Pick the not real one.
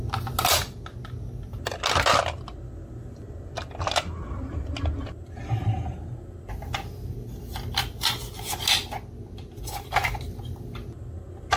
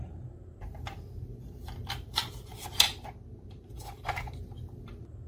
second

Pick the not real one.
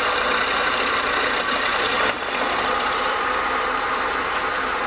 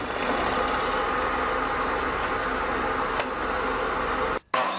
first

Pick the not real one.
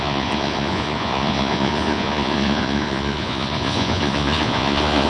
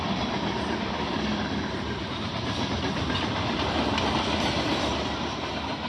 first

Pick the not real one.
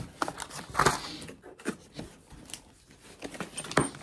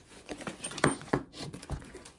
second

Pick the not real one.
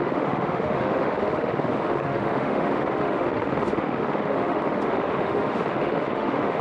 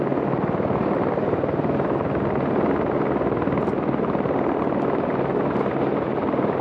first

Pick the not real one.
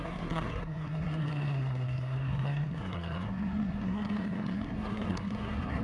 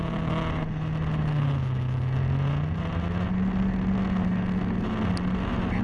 first